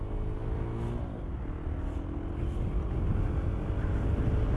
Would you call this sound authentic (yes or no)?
yes